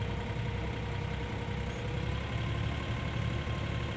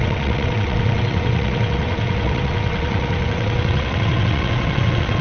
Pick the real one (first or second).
first